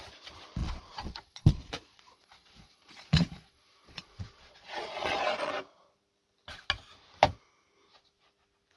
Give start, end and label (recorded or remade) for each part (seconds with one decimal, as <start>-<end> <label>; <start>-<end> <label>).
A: 0.0-0.6 recorded; 0.6-5.5 remade; 5.5-8.8 recorded